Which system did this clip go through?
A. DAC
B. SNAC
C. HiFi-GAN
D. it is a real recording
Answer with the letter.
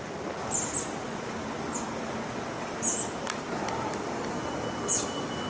D